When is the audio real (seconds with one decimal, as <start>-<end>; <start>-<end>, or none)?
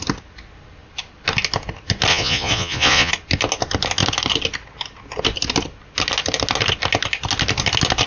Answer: 0.0-2.1; 3.1-8.1